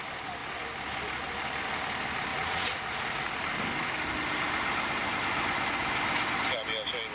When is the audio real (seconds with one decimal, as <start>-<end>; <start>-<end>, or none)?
0.0-2.3; 3.3-7.1